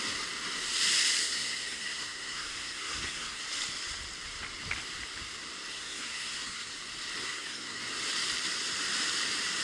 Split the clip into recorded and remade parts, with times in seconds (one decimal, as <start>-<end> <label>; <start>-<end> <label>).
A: 0.0-1.2 recorded; 1.2-3.4 remade; 3.4-5.7 recorded; 5.7-6.7 remade; 6.7-7.2 recorded; 7.2-7.8 remade; 7.8-9.6 recorded